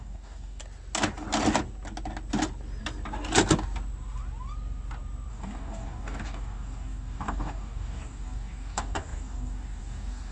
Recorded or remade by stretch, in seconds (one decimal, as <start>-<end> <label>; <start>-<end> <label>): 0.0-0.6 remade; 0.6-5.3 recorded; 5.3-10.3 remade